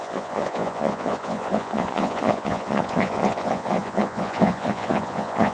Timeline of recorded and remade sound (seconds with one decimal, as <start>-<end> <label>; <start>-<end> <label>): 0.0-5.5 remade